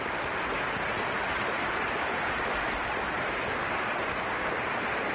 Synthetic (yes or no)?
no